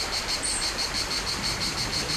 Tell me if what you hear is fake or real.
real